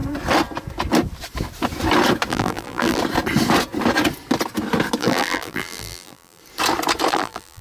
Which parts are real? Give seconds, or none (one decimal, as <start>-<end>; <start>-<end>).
0.0-2.3; 3.0-5.0; 6.4-7.1